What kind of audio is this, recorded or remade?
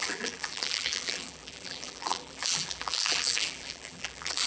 remade